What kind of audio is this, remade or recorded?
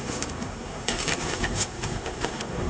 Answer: remade